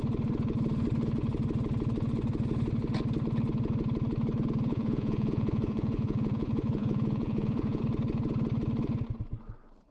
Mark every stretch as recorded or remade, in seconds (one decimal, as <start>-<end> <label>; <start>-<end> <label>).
0.0-4.7 recorded; 4.7-7.8 remade; 7.8-9.9 recorded